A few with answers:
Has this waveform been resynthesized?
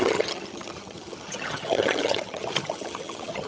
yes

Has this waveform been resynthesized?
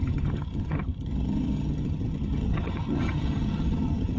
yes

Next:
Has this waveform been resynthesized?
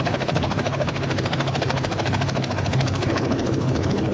yes